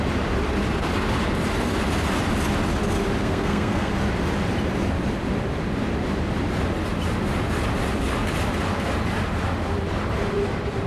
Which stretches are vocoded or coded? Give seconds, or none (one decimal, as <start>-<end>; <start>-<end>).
3.2-3.9